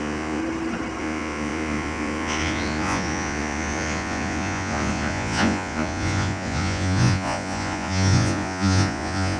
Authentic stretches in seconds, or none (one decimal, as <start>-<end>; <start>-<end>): 0.4-1.0

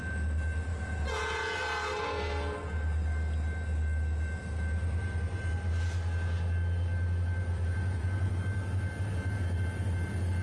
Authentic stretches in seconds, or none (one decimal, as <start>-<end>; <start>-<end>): 0.0-0.7; 1.6-7.5; 8.3-10.4

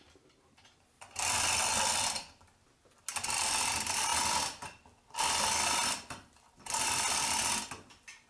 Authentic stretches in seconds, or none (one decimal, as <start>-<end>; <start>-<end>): 0.0-8.3